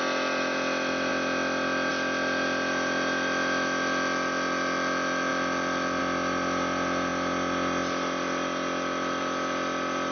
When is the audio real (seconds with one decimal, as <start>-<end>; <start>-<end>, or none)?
0.0-10.1